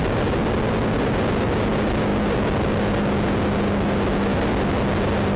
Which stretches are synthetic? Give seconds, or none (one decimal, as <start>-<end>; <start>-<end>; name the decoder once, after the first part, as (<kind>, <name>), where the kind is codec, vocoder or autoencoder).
none

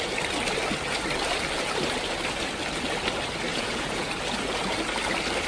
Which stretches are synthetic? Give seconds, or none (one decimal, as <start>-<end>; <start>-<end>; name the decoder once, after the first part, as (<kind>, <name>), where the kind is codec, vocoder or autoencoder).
3.5-4.1 (vocoder, Vocos)

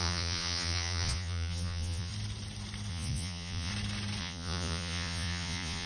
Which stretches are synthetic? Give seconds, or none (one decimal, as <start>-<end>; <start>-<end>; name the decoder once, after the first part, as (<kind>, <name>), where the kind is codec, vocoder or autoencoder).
0.0-2.1 (vocoder, Vocos); 2.9-3.7; 4.2-5.9